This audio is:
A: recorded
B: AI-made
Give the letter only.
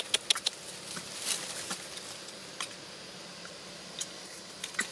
A